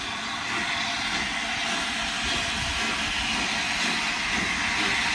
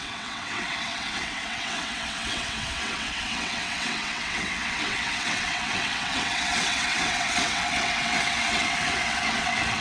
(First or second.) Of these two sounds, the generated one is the second